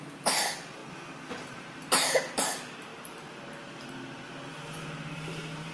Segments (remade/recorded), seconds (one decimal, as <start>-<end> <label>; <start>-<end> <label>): 0.0-0.8 remade; 0.8-1.4 recorded; 1.4-5.7 remade